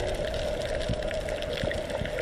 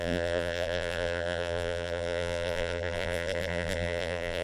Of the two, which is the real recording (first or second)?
first